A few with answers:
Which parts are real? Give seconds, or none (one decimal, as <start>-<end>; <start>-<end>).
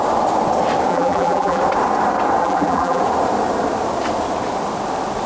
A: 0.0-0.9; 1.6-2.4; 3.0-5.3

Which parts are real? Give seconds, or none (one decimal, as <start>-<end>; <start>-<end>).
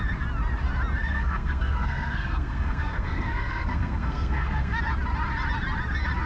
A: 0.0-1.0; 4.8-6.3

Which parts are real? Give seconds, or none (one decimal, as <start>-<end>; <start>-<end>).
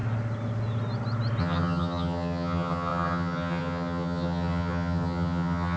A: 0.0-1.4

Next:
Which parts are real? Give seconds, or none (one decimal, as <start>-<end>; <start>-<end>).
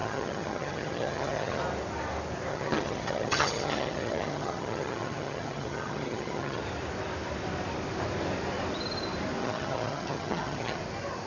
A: 1.6-2.5; 6.6-9.4; 10.8-11.3